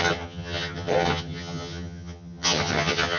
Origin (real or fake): fake